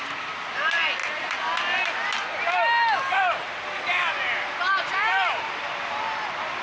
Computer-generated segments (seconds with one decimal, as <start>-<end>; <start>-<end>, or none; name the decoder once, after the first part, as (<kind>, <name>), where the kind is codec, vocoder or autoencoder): none